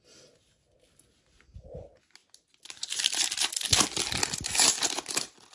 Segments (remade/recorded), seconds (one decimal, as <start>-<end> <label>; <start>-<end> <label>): 0.0-5.5 recorded